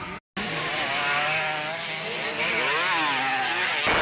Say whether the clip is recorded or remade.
recorded